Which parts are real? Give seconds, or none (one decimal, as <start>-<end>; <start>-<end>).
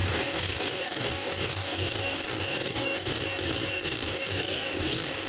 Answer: 3.2-3.7